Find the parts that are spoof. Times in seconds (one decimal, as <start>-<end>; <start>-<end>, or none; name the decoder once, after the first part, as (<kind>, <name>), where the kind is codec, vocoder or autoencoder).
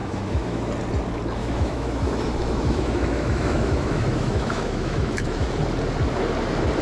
0.0-0.7 (autoencoder, DAC-VAE); 1.4-5.5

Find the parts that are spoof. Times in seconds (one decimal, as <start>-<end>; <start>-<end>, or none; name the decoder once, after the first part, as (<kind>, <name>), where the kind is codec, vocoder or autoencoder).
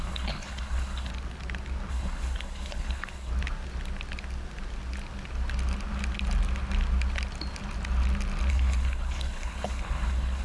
0.0-1.1 (codec, HILCodec); 1.9-3.3; 8.5-10.4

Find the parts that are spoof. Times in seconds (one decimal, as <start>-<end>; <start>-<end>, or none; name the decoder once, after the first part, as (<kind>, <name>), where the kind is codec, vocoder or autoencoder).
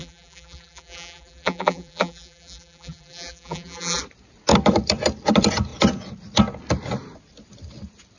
0.0-4.0 (vocoder, BigVGAN v2)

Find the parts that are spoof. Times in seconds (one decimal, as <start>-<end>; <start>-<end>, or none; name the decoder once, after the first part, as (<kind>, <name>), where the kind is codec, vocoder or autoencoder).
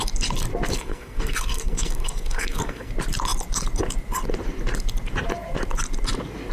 0.7-2.9 (codec, SNAC)